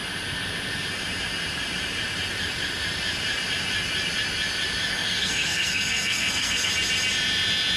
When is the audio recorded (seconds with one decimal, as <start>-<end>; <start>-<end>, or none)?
0.0-4.9; 6.7-7.8